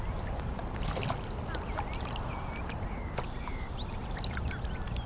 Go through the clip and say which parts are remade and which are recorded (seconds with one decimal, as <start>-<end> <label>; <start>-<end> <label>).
0.0-5.1 recorded